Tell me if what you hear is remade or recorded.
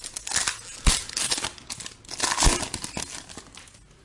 recorded